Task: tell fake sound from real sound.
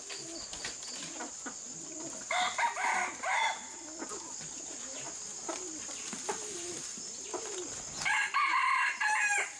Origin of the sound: real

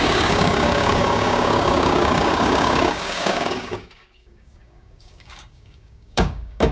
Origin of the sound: fake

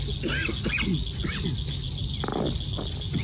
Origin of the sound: real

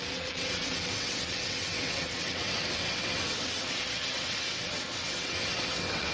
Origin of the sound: fake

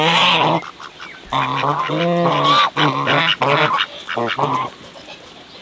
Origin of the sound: real